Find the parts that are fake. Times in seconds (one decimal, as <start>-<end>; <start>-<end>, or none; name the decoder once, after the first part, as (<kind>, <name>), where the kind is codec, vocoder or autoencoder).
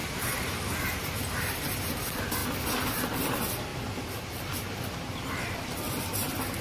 1.4-2.4 (vocoder, BigVGAN v2); 3.1-3.7; 5.1-6.6